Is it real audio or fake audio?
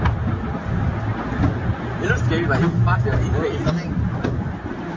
real